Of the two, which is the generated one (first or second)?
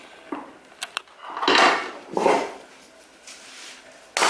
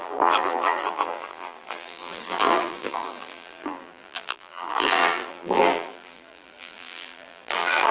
second